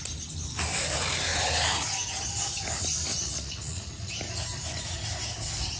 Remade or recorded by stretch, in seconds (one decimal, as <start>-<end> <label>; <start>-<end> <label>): 0.0-3.1 recorded; 3.1-4.1 remade; 4.1-5.8 recorded